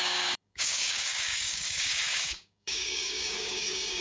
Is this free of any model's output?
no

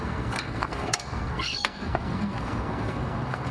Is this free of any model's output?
no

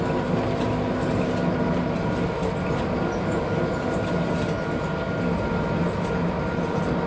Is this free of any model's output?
yes